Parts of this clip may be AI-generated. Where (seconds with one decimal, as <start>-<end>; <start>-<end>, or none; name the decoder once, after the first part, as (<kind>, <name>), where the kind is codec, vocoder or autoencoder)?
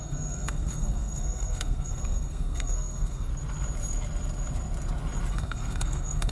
0.0-3.3 (codec, SNAC); 5.3-6.3